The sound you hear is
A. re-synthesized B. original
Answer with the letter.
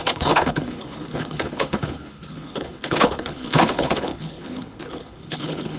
A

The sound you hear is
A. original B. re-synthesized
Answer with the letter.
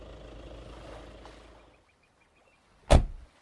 A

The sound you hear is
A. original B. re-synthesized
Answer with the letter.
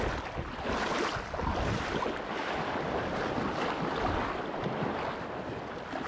A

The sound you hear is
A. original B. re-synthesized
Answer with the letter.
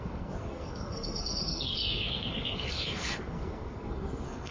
B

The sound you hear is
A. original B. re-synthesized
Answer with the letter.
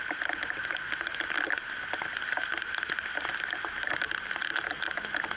A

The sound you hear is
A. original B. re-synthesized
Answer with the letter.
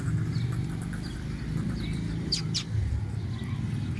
B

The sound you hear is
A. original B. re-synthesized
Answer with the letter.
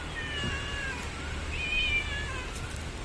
A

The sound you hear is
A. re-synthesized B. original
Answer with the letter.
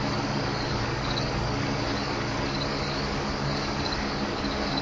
A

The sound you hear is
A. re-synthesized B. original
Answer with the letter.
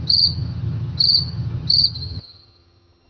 A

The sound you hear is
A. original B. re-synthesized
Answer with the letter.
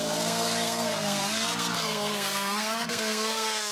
B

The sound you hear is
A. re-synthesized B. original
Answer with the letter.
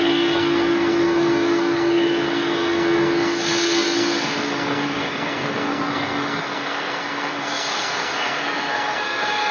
A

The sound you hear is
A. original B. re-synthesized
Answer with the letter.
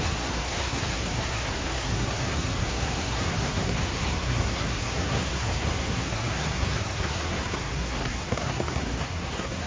B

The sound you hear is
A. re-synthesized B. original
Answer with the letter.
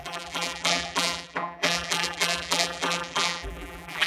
A